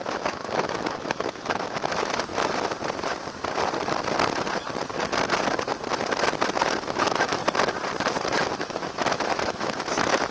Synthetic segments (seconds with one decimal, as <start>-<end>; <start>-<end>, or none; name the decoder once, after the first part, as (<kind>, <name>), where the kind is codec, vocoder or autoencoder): 0.0-2.3 (autoencoder, DAC-VAE); 6.9-7.4; 8.6-10.3